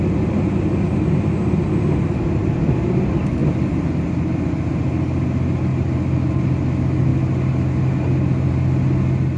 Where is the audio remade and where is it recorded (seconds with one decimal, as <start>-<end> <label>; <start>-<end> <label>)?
0.0-9.4 recorded